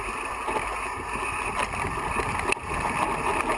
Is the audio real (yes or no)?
yes